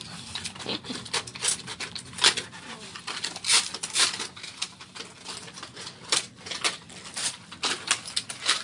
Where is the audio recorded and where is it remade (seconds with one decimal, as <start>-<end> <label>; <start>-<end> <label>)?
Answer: 0.0-1.7 remade; 1.7-2.5 recorded; 2.5-8.6 remade